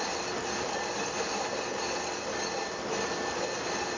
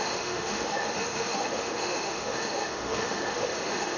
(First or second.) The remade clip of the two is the second